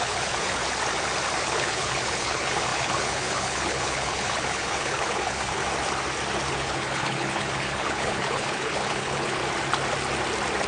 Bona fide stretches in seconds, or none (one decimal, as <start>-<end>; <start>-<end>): 0.6-1.4; 5.6-6.5; 9.4-10.7